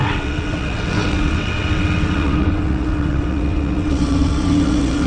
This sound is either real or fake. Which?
fake